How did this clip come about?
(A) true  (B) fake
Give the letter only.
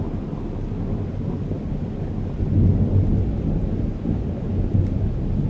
A